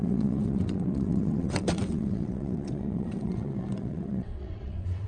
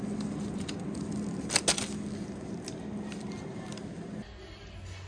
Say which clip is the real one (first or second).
second